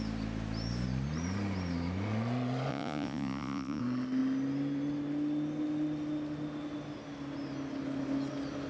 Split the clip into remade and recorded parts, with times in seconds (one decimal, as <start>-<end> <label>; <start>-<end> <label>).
0.0-2.7 recorded; 2.7-3.8 remade; 3.8-8.7 recorded